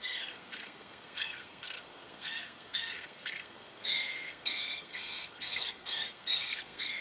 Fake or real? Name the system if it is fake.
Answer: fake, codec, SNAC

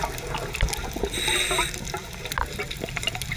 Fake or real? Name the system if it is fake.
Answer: real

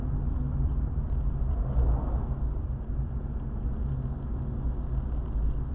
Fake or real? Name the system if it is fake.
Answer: real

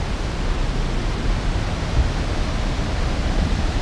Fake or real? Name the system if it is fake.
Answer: real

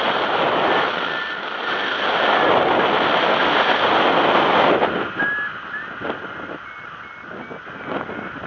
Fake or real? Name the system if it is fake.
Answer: real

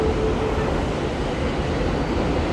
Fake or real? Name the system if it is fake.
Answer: real